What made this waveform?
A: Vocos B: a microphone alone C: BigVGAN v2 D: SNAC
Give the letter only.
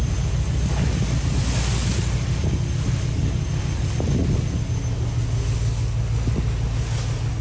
B